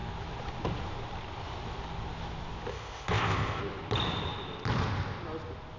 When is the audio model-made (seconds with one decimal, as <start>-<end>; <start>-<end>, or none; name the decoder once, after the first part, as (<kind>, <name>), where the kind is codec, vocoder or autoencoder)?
2.7-3.6 (codec, ZipCodec)